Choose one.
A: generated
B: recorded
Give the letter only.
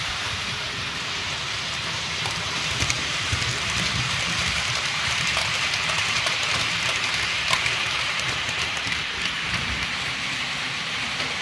A